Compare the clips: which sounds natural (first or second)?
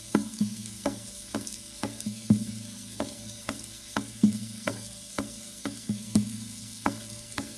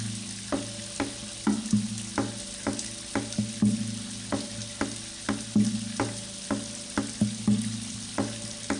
second